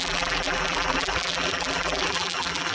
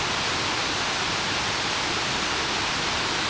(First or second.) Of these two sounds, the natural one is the second